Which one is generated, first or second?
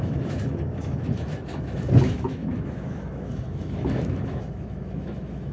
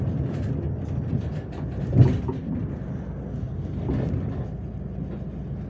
first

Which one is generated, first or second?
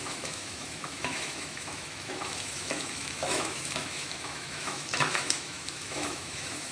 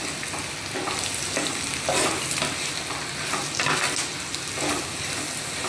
first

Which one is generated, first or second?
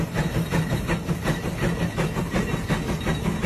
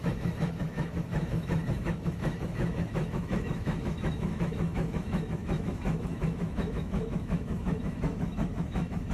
second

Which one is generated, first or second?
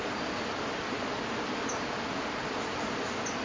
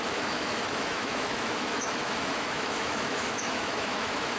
second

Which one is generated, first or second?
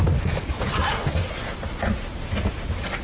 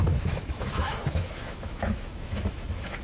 second